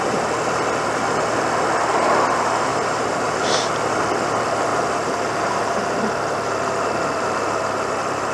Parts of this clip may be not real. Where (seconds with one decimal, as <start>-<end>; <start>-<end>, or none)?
2.7-3.3